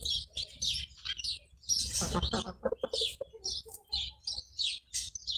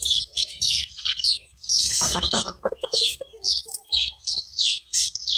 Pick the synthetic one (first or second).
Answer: second